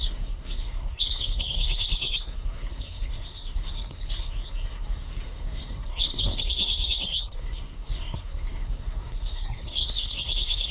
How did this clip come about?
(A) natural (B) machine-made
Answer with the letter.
B